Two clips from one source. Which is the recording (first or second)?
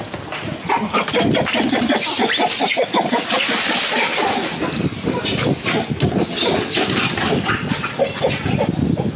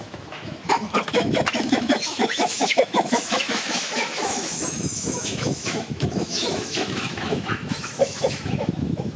first